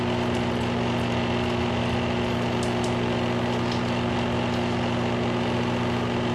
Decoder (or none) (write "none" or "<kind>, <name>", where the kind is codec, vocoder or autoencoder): none